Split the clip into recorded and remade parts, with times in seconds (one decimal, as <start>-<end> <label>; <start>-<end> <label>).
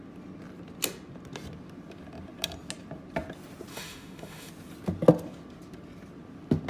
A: 0.0-3.7 recorded; 3.7-4.5 remade; 4.5-6.7 recorded